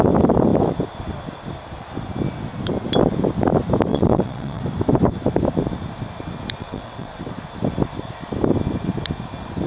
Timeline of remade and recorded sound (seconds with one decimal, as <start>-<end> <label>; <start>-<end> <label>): 0.0-3.9 recorded; 3.9-4.6 remade; 4.6-6.6 recorded; 6.6-7.2 remade; 7.2-9.7 recorded